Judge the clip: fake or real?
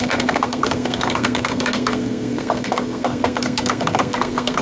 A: fake